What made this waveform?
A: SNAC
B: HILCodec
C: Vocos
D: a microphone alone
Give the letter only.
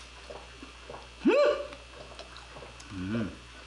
D